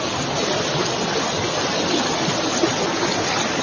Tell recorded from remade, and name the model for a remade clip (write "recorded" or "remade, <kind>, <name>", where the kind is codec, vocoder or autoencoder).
recorded